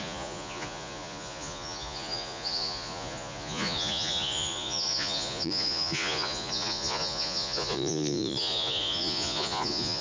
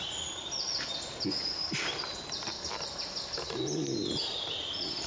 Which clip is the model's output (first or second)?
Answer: first